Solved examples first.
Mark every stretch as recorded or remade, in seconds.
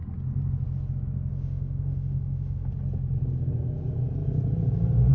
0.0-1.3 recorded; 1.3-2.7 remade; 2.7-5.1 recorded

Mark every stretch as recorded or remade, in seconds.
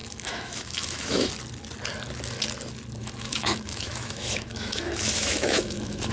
0.0-1.3 remade; 1.3-3.0 recorded; 3.0-6.1 remade